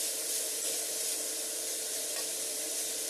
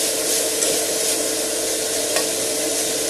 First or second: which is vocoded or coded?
first